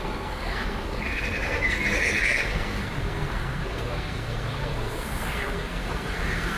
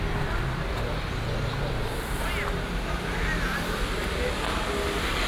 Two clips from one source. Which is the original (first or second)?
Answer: second